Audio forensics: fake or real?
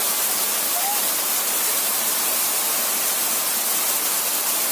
real